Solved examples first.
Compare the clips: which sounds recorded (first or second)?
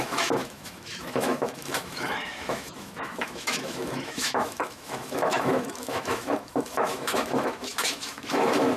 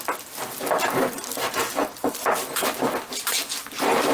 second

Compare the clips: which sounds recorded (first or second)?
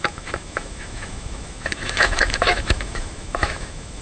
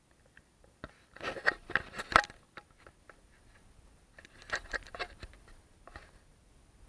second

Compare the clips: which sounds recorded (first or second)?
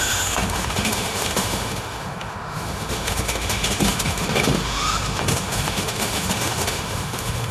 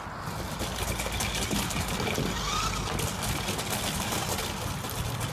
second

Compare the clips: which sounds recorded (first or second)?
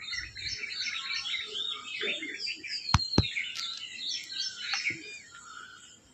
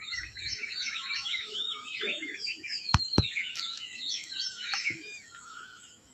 first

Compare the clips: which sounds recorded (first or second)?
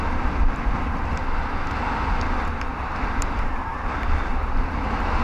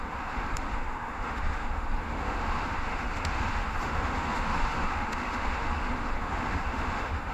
first